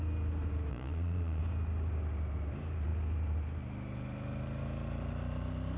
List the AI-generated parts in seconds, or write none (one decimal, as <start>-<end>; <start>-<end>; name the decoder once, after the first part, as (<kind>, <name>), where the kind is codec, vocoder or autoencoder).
0.7-1.4 (vocoder, Vocos)